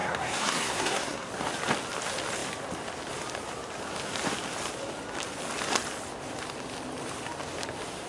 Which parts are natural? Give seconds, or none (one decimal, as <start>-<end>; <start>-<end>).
1.3-8.1